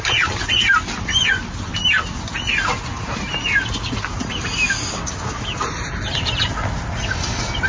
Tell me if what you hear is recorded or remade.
recorded